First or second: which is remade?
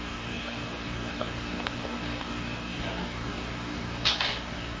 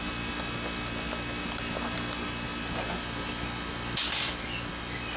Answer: first